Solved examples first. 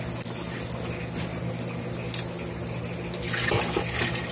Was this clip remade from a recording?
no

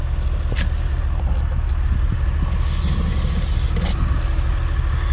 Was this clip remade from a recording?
no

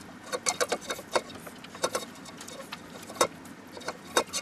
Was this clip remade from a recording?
no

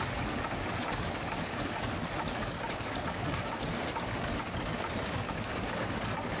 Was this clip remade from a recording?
yes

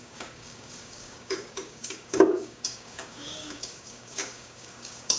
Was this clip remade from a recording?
yes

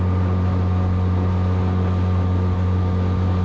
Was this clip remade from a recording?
no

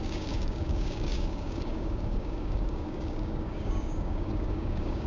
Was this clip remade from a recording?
yes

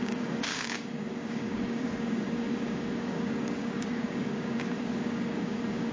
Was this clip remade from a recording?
yes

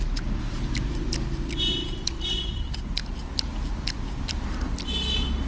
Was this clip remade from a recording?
no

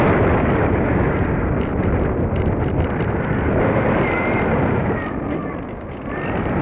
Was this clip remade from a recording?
no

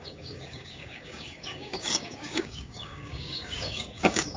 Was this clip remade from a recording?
yes